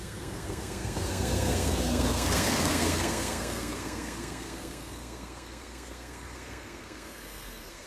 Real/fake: fake